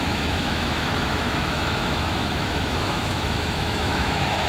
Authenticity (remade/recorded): remade